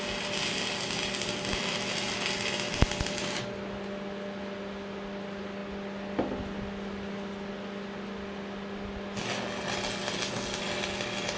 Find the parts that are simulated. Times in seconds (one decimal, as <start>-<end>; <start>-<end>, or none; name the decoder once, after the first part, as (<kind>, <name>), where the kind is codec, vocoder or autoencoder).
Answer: none